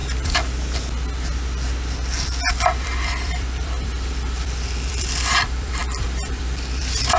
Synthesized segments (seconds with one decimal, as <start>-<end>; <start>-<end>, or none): 2.5-7.2